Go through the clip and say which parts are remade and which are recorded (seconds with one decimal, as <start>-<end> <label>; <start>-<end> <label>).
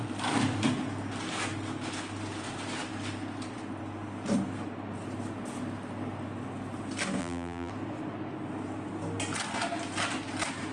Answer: 0.0-7.2 recorded; 7.2-7.7 remade; 7.7-10.7 recorded